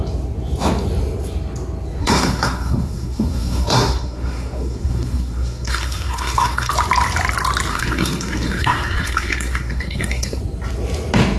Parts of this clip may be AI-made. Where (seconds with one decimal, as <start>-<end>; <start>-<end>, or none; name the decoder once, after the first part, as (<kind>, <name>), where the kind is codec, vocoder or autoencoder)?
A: 2.0-6.7 (codec, SNAC); 7.7-10.4